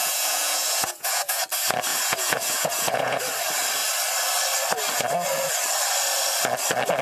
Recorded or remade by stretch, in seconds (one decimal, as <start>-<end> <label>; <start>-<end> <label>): 0.0-1.4 remade; 1.4-1.9 recorded; 1.9-3.2 remade; 3.2-7.0 recorded